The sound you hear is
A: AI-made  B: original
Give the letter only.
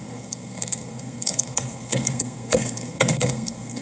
A